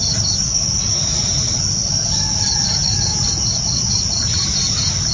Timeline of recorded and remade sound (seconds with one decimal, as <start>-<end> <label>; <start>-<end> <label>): 0.0-0.4 recorded; 0.4-1.0 remade; 1.0-5.1 recorded